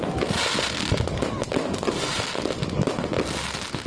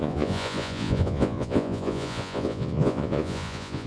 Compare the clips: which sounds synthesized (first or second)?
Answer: second